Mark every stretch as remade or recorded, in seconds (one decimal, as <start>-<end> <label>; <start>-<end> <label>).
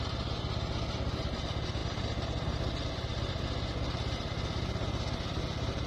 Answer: 0.0-1.8 recorded; 1.8-3.4 remade; 3.4-5.9 recorded